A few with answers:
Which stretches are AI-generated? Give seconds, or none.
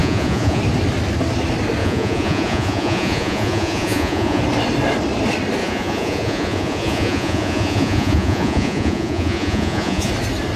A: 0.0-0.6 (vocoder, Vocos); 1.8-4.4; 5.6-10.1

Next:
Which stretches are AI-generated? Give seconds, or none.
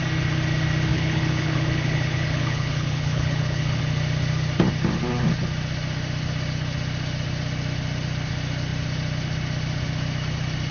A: 0.9-3.8 (codec, HILCodec)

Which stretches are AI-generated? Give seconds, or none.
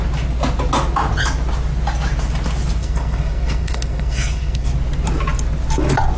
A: 2.8-4.7 (codec, SNAC)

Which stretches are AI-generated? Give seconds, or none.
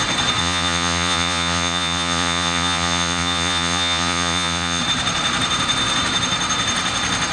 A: 0.4-4.8 (vocoder, Vocos)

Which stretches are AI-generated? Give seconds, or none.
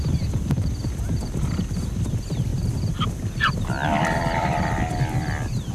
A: none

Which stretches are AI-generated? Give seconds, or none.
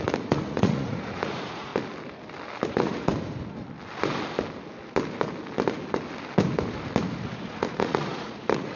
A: 0.0-1.7 (vocoder, Vocos); 2.7-3.1; 7.2-8.8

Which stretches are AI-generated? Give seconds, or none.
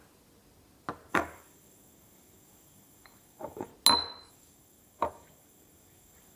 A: 1.1-3.7 (codec, DAC); 4.3-6.4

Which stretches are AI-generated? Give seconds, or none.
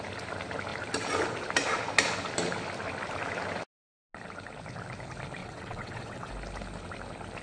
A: 5.4-6.3 (vocoder, WaveNeXt)